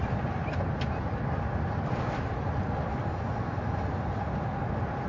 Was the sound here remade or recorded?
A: recorded